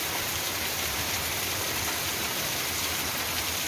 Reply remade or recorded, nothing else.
recorded